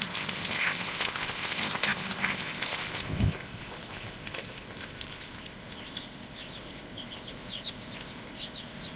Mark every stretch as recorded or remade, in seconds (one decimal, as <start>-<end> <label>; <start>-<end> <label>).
0.0-9.0 remade